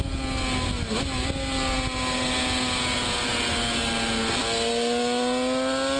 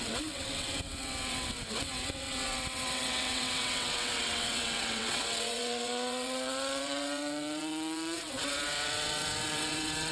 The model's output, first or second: second